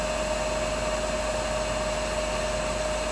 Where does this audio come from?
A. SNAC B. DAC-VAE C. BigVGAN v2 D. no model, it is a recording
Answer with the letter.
D